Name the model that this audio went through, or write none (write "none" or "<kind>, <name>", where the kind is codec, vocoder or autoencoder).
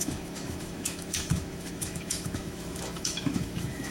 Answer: autoencoder, DAC-VAE